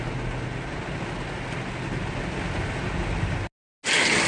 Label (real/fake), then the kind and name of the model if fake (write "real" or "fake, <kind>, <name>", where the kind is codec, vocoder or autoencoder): real